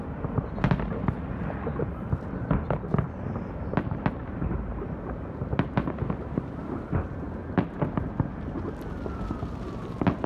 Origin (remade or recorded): recorded